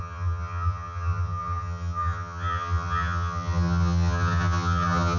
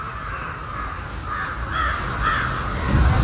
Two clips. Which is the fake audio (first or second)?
first